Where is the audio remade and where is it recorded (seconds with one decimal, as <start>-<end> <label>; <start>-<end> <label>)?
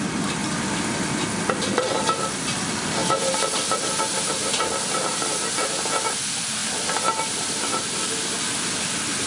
0.0-0.4 recorded; 0.4-2.4 remade; 2.4-3.0 recorded; 3.0-3.9 remade; 3.9-6.6 recorded; 6.6-8.7 remade; 8.7-9.3 recorded